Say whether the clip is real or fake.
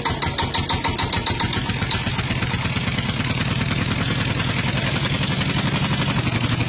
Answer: real